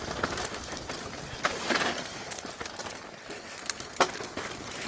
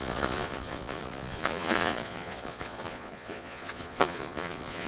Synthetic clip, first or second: second